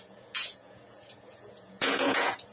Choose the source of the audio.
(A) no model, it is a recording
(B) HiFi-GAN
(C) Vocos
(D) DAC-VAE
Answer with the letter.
C